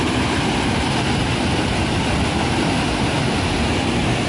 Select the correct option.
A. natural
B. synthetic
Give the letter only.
A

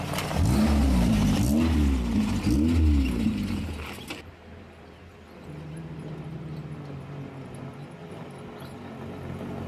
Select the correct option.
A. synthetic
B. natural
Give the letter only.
B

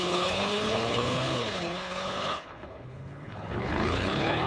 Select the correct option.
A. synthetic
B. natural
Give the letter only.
A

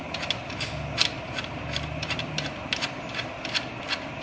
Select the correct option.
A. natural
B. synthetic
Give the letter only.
A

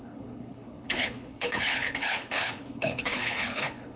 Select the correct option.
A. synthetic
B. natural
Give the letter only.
A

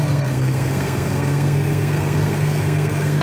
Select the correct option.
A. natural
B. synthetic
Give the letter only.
B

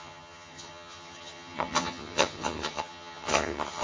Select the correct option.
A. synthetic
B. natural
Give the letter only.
A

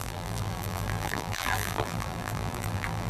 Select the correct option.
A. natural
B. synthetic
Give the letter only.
B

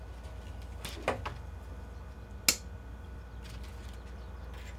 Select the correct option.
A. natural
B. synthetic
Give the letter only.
A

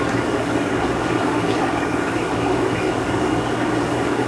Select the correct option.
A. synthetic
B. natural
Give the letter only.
A